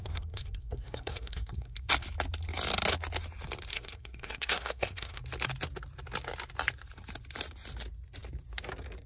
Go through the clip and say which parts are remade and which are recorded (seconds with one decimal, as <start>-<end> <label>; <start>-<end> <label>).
0.0-1.9 remade; 1.9-3.7 recorded; 3.7-5.2 remade; 5.2-9.1 recorded